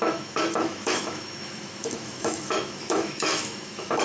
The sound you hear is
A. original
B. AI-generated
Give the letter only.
B